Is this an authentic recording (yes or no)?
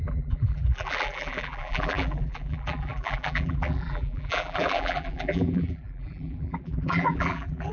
no